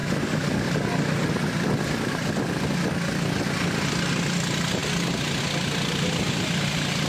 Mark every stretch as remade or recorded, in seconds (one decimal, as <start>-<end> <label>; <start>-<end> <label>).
0.0-7.1 recorded